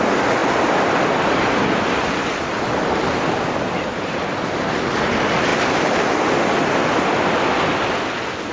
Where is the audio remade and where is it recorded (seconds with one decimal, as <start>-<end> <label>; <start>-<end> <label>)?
0.0-5.5 recorded; 5.5-6.1 remade; 6.1-8.5 recorded